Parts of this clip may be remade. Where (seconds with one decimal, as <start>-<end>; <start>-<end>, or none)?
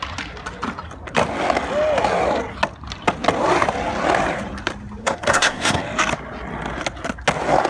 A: 5.0-5.8